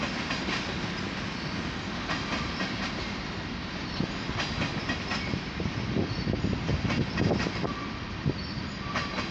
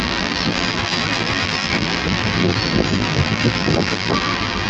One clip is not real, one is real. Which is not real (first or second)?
second